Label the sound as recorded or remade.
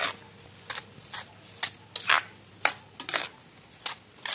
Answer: recorded